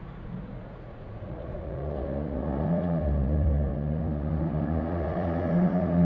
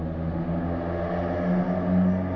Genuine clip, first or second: second